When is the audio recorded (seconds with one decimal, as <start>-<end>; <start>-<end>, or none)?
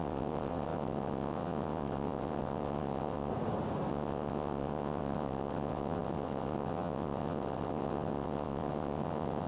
3.3-3.9